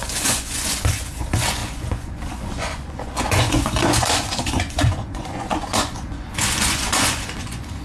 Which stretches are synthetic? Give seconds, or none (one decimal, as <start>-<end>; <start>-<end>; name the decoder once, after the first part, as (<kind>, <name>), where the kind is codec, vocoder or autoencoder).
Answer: 0.0-7.8 (vocoder, Vocos)